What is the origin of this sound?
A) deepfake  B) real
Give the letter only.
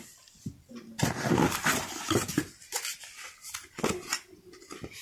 B